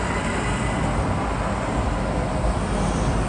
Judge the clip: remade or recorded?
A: recorded